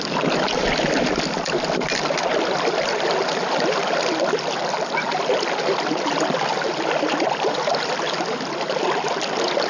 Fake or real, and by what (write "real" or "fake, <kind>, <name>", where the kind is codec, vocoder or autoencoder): real